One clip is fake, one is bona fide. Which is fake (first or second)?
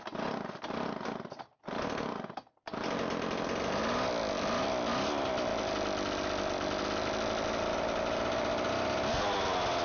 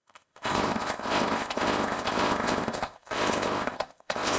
second